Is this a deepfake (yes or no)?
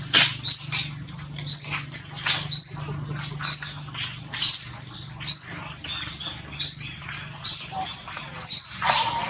no